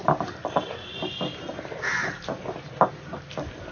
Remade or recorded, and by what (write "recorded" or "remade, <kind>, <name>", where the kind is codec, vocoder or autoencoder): remade, vocoder, BigVGAN v2